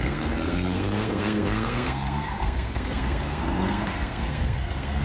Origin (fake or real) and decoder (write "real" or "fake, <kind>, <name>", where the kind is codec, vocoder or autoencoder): fake, codec, SNAC